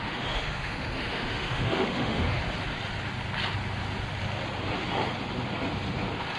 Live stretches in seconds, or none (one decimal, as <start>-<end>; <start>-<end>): 2.4-6.4